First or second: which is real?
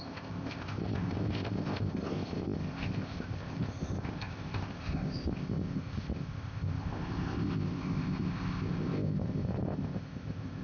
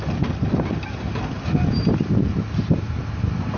second